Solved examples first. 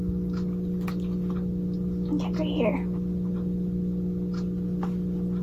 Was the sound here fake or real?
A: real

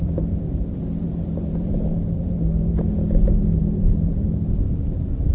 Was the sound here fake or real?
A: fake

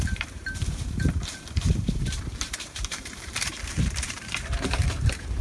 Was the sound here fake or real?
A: fake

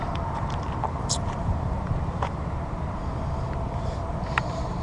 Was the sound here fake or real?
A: fake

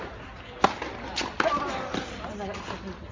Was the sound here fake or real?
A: real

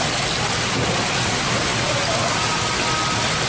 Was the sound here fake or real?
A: real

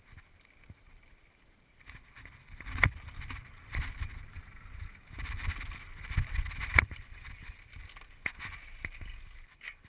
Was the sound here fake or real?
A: real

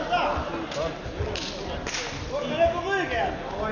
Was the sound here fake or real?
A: real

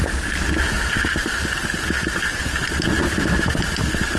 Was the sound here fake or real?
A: real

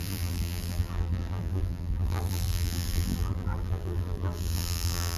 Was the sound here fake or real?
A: fake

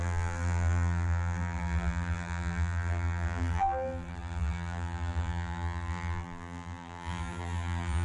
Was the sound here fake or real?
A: fake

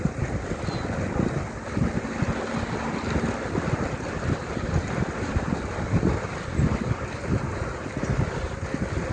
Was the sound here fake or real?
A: real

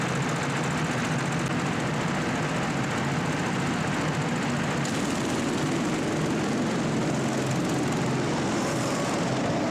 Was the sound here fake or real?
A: real